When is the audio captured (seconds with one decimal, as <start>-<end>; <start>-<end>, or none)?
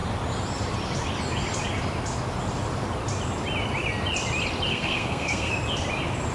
0.0-4.7; 5.5-6.3